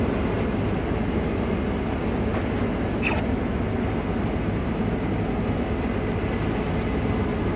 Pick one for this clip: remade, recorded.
recorded